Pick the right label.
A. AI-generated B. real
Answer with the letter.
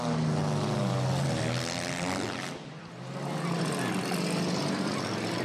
B